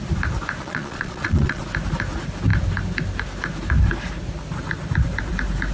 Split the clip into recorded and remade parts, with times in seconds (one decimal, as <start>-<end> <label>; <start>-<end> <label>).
0.0-0.6 recorded; 0.6-1.6 remade; 1.6-5.7 recorded